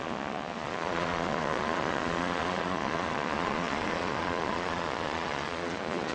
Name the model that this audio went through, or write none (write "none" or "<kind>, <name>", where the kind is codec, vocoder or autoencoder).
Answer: vocoder, Vocos